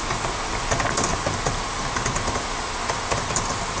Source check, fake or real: real